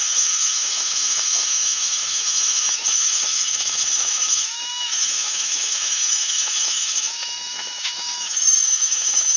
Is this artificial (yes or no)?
yes